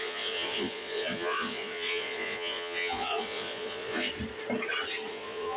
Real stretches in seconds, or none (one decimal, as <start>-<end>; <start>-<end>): 4.1-5.1